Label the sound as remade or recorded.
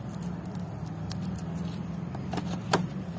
recorded